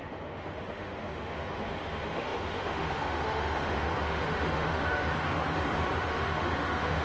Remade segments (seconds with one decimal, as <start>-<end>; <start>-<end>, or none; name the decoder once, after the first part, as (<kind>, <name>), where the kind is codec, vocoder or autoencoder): 0.0-7.0 (autoencoder, DAC-VAE)